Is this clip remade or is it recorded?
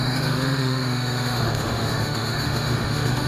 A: remade